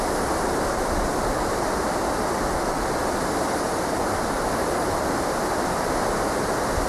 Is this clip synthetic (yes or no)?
no